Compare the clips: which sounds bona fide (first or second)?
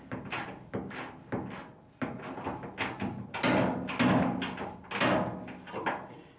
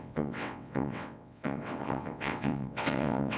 first